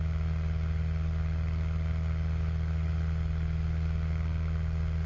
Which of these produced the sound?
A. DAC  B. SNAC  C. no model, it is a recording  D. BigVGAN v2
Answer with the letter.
C